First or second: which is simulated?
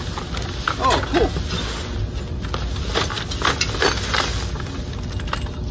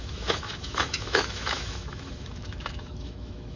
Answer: second